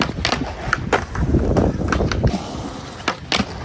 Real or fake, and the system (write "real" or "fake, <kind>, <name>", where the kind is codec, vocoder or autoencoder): real